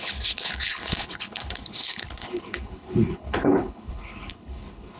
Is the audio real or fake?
fake